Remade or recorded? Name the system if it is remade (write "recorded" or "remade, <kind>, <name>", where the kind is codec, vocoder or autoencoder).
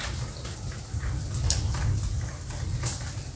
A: recorded